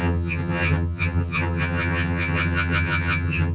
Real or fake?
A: fake